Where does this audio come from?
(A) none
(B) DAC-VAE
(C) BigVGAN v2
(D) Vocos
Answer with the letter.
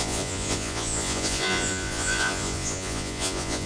D